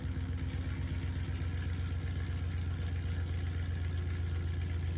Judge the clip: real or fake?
real